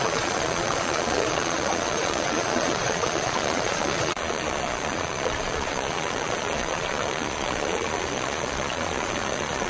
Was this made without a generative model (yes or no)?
no